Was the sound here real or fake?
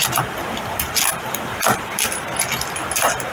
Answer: real